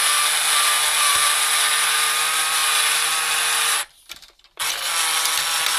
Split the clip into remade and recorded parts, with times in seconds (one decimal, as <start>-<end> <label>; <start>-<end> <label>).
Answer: 0.0-5.8 recorded